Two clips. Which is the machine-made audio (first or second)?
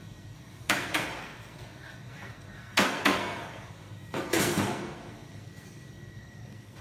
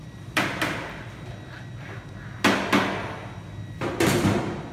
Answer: first